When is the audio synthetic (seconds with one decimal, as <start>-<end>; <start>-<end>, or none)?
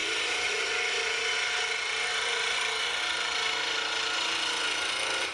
0.0-3.0